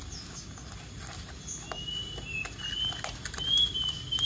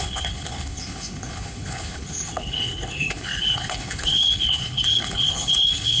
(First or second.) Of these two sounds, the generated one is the second